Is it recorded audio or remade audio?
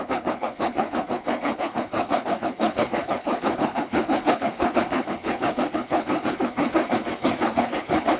remade